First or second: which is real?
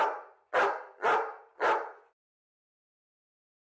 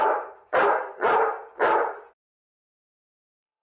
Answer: first